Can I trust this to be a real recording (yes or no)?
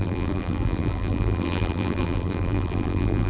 no